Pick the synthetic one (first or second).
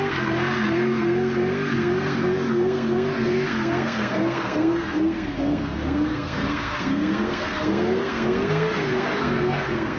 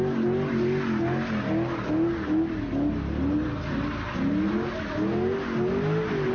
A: first